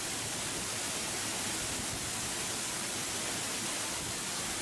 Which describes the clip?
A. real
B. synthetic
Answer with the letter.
A